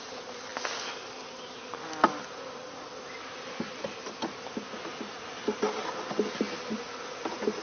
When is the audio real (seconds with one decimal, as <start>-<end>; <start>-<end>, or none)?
0.0-7.6